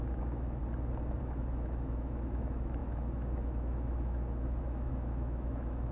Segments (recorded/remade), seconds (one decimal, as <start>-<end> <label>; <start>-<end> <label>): 0.0-0.6 remade; 0.6-1.2 recorded; 1.2-5.9 remade